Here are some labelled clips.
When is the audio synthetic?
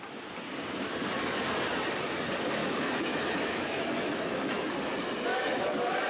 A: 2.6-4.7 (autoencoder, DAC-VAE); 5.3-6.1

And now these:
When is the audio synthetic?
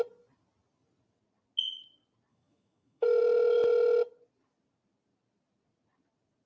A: 2.3-3.2 (autoencoder, DAC-VAE)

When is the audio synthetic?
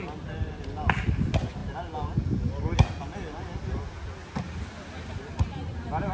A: none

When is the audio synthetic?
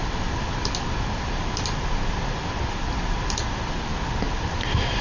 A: none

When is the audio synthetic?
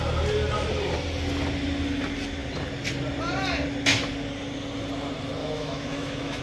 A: 5.4-6.4 (autoencoder, DAC-VAE)